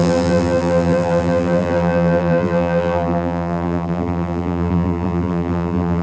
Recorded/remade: remade